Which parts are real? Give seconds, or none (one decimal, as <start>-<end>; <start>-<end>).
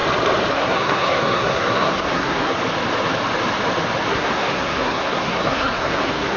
0.0-0.5; 2.6-4.1